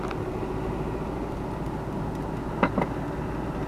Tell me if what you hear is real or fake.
real